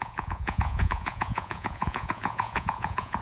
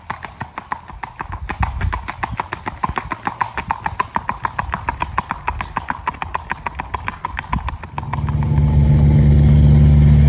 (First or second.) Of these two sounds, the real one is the second